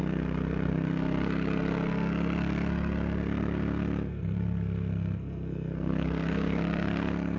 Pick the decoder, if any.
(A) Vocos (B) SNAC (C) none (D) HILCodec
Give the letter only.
B